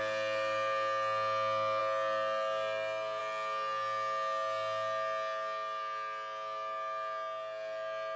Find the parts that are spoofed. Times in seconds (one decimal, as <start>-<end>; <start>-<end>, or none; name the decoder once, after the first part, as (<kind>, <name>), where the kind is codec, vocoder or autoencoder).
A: none